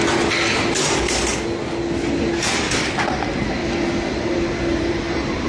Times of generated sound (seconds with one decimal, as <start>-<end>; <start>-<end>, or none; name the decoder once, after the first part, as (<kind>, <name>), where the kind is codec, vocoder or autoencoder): none